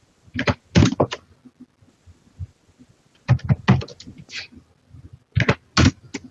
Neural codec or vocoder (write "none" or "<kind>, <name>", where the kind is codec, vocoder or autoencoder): none